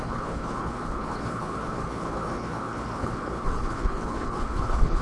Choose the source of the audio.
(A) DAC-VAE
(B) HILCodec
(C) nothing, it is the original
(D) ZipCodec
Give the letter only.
B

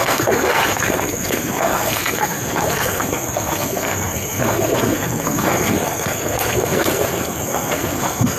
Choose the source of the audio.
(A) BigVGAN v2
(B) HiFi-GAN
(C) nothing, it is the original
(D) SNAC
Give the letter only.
D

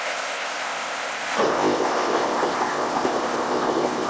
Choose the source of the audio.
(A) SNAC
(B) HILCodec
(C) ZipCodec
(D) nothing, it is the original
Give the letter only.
C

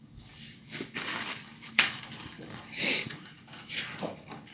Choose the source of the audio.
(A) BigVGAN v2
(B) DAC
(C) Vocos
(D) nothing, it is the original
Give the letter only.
B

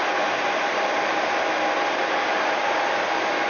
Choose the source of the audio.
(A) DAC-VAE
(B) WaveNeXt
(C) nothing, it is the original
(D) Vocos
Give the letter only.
C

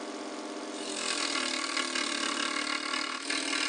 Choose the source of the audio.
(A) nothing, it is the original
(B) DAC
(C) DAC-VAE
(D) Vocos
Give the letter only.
A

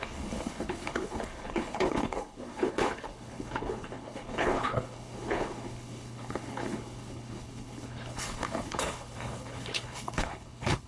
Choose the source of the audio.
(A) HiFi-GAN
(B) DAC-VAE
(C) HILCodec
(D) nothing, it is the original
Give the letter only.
C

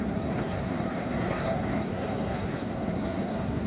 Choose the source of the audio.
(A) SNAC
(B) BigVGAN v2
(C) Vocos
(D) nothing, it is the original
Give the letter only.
A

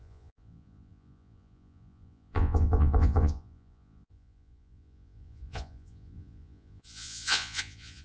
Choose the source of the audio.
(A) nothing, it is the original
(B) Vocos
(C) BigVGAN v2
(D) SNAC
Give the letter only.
B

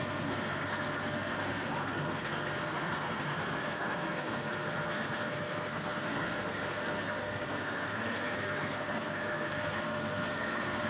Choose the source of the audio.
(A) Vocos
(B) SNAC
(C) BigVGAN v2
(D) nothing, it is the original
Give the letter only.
B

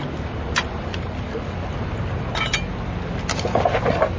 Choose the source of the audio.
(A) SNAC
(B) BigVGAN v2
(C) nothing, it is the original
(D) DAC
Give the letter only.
C